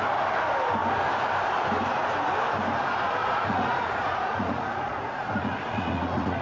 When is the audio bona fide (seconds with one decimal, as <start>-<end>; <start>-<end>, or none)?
0.0-3.2